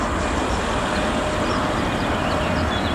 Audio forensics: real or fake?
real